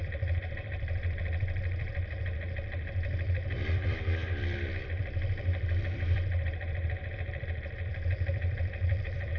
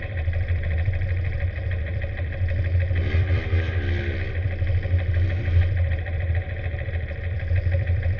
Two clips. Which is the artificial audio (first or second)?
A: first